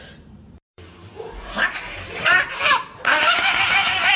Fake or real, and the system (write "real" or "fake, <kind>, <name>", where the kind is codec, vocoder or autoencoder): fake, vocoder, BigVGAN v2